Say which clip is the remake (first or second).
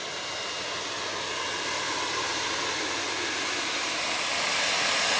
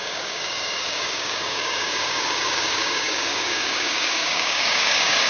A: second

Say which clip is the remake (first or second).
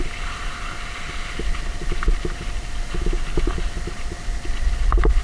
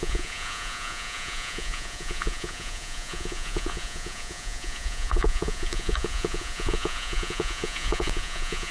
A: second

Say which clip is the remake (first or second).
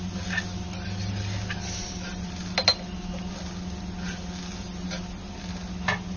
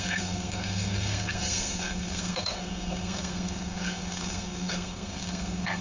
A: second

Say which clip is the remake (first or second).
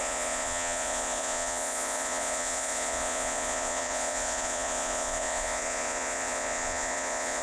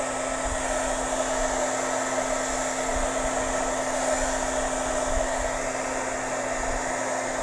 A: first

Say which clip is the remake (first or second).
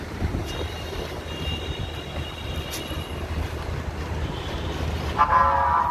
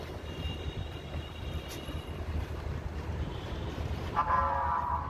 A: second